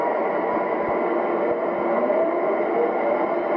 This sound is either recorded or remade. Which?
recorded